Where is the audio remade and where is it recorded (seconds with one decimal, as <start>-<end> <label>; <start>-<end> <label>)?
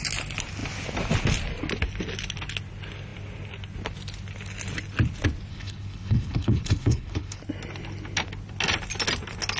0.0-5.5 recorded; 5.5-7.4 remade; 7.4-9.6 recorded